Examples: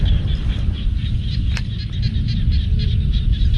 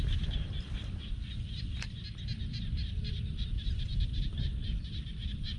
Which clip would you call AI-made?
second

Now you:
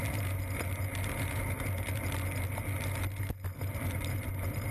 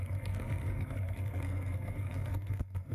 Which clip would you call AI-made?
second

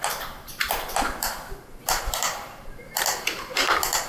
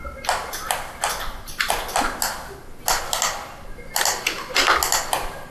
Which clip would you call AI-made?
first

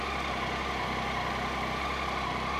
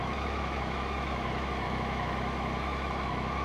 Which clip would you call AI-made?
second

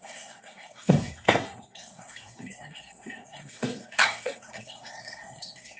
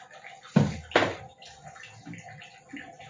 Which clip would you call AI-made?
first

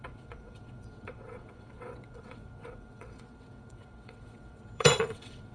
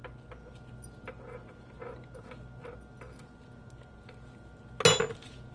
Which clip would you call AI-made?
first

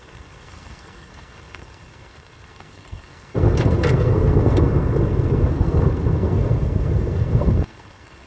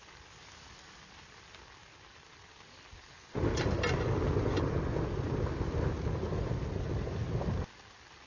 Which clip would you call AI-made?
first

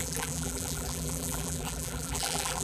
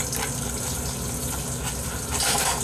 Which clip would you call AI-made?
first